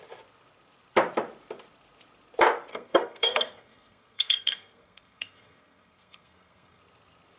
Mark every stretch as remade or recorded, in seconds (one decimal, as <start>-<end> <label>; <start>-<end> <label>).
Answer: 0.0-2.7 recorded; 2.7-6.8 remade; 6.8-7.4 recorded